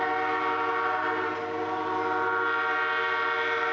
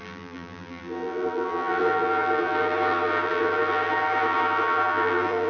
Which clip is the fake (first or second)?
second